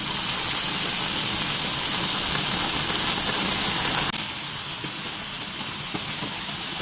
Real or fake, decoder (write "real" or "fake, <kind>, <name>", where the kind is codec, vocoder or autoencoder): real